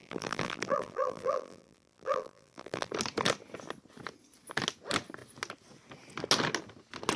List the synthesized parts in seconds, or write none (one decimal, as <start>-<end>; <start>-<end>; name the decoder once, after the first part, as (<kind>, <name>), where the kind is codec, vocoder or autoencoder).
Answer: 0.0-2.9 (vocoder, BigVGAN v2)